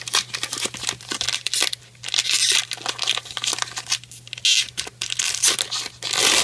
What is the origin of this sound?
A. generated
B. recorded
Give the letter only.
B